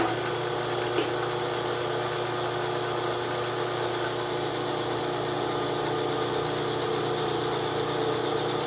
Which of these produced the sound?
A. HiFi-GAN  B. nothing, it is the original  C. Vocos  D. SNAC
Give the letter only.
B